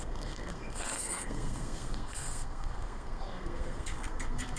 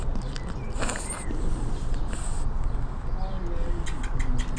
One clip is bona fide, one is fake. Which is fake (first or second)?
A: first